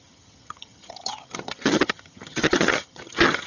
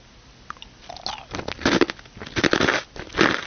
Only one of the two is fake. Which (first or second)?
first